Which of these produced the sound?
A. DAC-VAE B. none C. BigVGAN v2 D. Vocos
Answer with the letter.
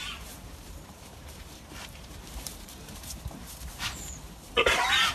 C